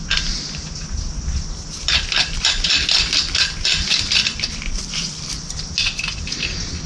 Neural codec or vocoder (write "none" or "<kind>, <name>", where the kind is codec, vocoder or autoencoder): none